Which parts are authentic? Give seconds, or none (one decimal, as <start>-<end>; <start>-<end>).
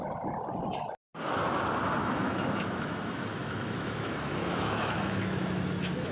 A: 0.0-2.0